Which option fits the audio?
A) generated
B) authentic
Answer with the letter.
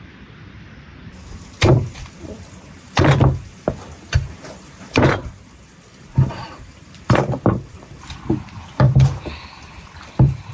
A